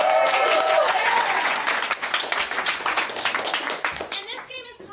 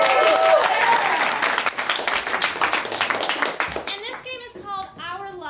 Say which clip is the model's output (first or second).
first